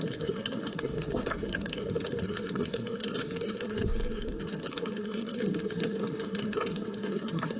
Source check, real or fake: fake